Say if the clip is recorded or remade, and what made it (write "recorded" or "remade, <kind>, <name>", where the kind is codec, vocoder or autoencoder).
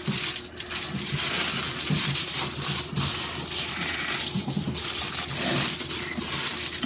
recorded